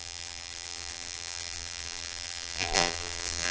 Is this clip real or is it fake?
fake